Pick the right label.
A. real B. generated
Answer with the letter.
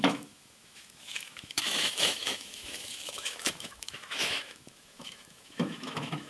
B